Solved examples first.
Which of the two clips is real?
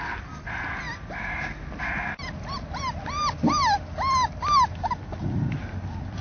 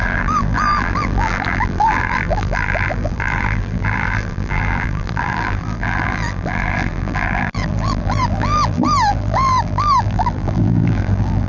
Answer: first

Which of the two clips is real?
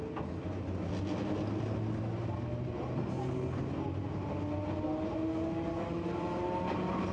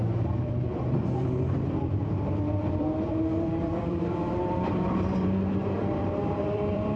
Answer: first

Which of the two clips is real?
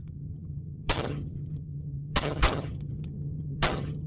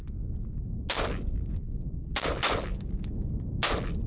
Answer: second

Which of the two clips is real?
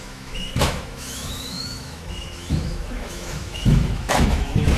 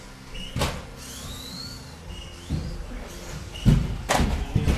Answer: second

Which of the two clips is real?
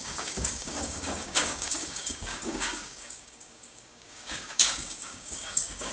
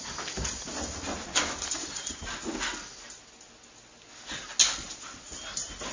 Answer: second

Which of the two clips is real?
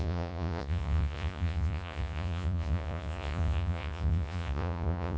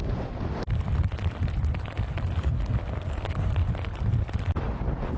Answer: second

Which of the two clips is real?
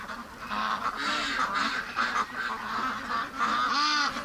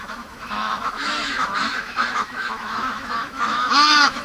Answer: first